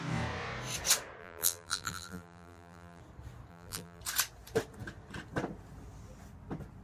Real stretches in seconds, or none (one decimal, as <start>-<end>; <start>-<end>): 0.0-1.2; 3.0-3.5; 4.0-6.8